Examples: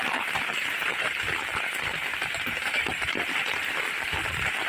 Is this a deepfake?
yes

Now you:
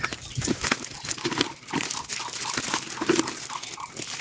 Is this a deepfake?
no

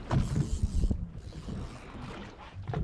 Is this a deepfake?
no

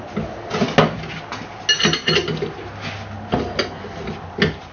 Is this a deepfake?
no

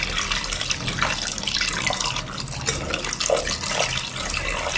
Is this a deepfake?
no